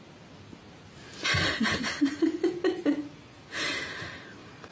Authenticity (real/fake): real